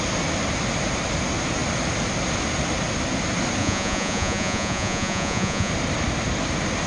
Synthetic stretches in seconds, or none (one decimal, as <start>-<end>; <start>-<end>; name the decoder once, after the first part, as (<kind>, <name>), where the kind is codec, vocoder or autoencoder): 3.6-5.7 (vocoder, Vocos)